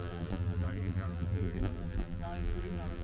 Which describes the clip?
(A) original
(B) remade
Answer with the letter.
B